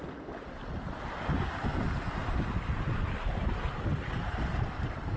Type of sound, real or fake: real